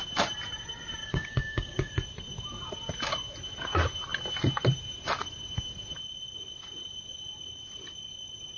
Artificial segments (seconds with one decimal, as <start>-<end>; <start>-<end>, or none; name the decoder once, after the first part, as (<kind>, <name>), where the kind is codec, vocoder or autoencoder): 1.0-1.9 (codec, DAC)